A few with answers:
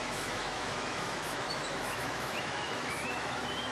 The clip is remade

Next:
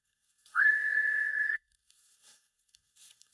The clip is remade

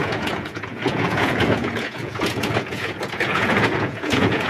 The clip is remade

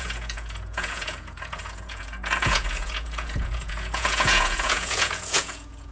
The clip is remade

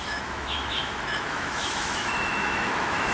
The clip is remade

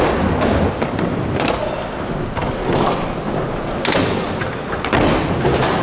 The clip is recorded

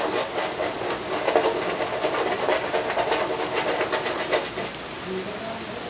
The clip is recorded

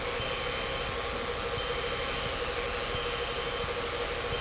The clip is recorded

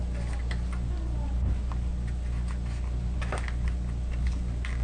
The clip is recorded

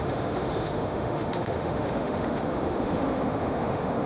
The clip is remade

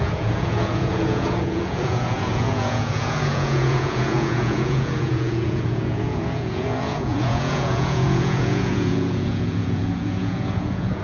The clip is remade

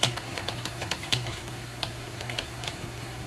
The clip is remade